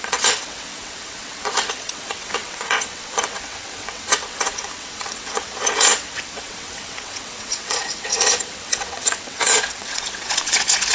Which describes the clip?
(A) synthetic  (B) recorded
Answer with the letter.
A